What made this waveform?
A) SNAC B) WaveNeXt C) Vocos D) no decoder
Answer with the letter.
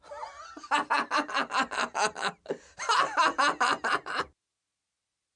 D